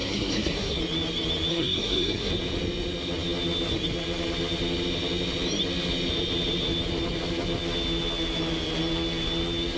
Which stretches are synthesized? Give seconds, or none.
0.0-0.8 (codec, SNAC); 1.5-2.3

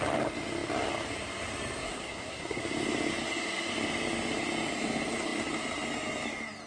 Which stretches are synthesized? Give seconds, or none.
1.8-2.6 (codec, SNAC)

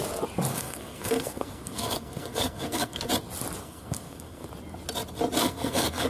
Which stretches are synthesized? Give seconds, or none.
0.5-3.1 (codec, SNAC); 3.6-4.5; 5.4-6.1

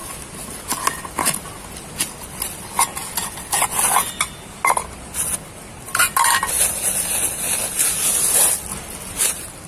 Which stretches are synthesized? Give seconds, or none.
none

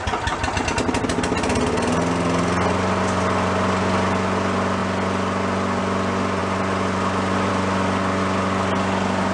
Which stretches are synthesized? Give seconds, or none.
none